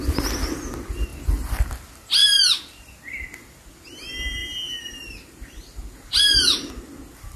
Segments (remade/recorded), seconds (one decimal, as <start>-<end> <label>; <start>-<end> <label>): 0.0-1.1 recorded; 1.1-1.7 remade; 1.7-4.4 recorded; 4.4-6.7 remade; 6.7-7.4 recorded

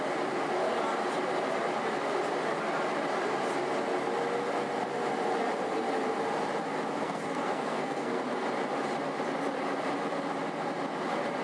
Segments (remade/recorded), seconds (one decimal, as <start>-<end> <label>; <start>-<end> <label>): 0.0-7.0 recorded; 7.0-8.2 remade; 8.2-11.4 recorded

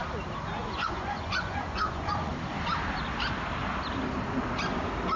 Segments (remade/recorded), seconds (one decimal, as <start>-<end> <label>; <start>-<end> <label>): 0.0-0.6 recorded; 0.6-2.3 remade; 2.3-5.2 recorded

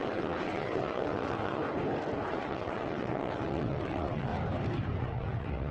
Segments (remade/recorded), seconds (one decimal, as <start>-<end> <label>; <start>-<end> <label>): 0.0-1.6 remade; 1.6-2.3 recorded; 2.3-4.3 remade; 4.3-5.0 recorded; 5.0-5.7 remade

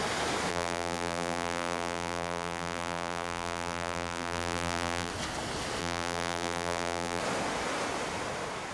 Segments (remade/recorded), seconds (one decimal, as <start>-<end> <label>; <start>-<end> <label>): 0.0-0.5 recorded; 0.5-5.1 remade; 5.1-5.8 recorded; 5.8-7.2 remade; 7.2-8.7 recorded